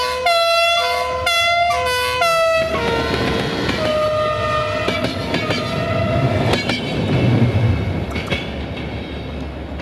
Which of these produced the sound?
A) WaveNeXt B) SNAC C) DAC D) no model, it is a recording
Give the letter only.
D